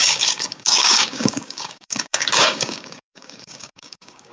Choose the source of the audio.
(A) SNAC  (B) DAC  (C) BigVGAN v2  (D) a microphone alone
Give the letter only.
B